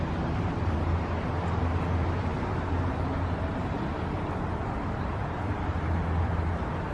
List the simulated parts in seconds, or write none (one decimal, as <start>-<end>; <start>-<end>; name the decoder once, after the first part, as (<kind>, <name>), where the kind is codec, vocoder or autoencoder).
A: none